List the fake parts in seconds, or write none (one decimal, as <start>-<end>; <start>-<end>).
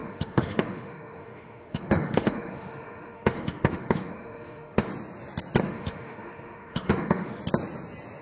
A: 0.0-4.9; 5.6-7.4